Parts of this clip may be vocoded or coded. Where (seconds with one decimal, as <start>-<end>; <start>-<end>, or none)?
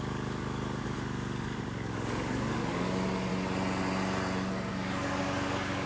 0.0-3.3; 4.7-5.9